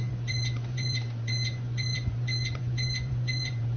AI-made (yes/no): yes